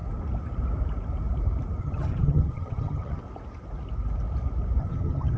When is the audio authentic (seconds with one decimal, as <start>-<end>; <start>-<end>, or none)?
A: 0.0-1.8; 3.2-4.8